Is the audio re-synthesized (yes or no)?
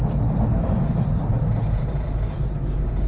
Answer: no